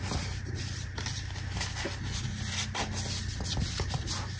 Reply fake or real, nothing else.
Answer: real